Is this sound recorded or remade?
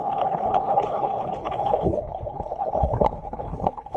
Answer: remade